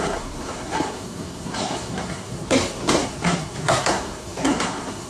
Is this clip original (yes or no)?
no